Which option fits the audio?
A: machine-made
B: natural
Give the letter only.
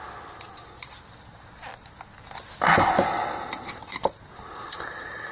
B